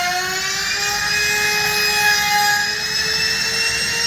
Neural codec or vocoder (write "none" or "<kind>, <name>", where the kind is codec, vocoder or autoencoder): none